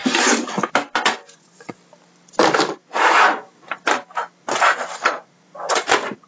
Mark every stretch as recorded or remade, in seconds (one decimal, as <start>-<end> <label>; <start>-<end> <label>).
0.0-1.2 recorded; 1.2-1.8 remade; 1.8-5.4 recorded; 5.4-6.3 remade